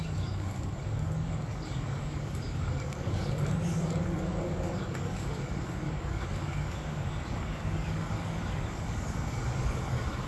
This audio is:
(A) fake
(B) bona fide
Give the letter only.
A